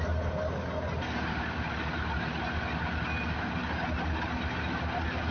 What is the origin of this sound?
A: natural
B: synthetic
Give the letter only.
A